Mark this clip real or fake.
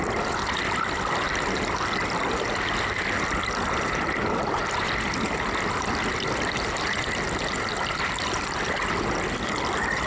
real